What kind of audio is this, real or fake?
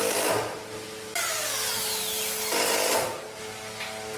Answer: real